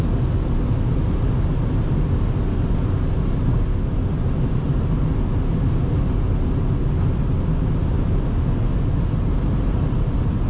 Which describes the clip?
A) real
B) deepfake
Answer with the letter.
A